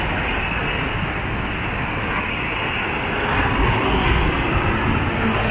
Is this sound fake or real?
real